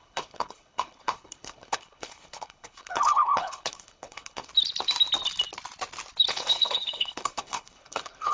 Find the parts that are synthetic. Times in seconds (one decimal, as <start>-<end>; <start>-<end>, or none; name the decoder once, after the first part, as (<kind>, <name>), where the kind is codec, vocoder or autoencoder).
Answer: 0.0-4.5 (codec, HILCodec); 6.3-8.3